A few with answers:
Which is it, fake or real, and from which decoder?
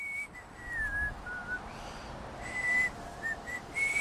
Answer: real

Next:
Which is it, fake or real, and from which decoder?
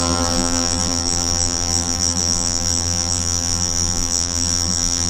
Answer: fake, vocoder, BigVGAN v2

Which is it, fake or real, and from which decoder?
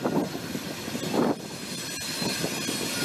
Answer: real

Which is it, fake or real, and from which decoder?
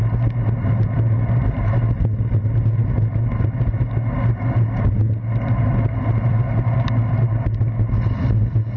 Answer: real